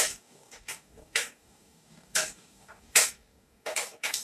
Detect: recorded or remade remade